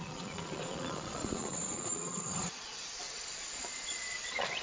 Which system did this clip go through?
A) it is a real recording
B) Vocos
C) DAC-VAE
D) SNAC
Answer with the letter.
B